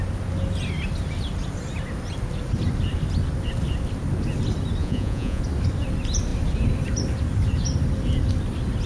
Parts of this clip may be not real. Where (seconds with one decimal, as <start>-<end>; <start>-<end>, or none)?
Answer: 4.8-5.4

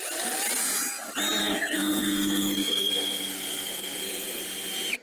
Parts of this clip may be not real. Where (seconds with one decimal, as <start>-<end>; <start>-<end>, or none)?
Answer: 1.4-4.4

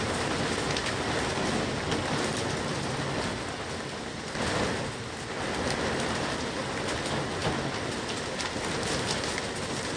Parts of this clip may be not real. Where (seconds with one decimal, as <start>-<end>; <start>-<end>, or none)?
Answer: none

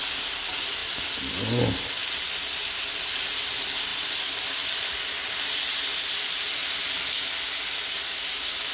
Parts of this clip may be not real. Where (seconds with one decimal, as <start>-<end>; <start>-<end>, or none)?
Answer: none

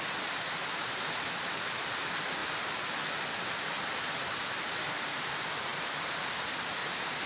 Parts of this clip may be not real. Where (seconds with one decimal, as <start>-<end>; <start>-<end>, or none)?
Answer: 0.0-2.4; 3.6-7.3

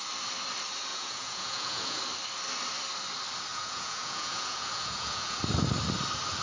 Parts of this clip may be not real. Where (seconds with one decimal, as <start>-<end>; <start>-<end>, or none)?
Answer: 0.9-2.0; 3.5-5.4

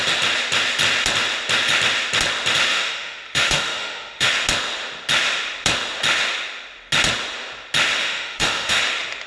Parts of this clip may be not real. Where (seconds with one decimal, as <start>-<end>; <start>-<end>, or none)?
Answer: 2.7-4.3; 8.0-8.8